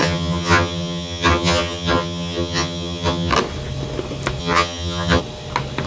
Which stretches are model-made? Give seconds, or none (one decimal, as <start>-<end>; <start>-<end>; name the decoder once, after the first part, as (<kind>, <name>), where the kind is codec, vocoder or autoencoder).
0.0-3.3 (vocoder, HiFi-GAN); 4.4-5.2